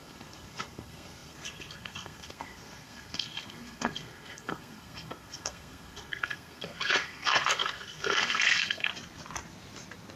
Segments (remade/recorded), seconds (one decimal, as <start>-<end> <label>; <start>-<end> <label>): 0.0-8.9 remade; 8.9-10.2 recorded